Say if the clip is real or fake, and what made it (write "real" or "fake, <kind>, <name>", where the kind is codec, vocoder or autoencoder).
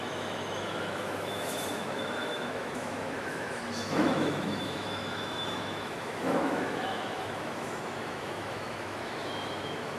fake, autoencoder, DAC-VAE